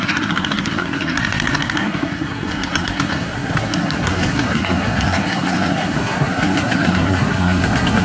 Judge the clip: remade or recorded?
remade